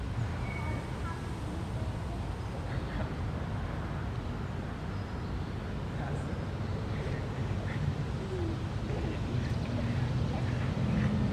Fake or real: real